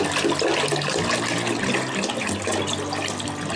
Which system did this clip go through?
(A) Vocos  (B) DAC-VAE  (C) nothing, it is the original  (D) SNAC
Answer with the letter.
C